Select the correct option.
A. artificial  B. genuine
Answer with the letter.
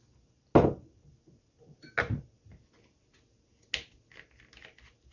B